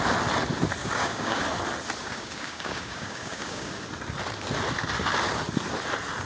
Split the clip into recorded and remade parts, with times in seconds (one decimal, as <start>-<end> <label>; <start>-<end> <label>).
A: 0.0-0.8 recorded; 0.8-1.4 remade; 1.4-2.0 recorded; 2.0-3.7 remade; 3.7-6.3 recorded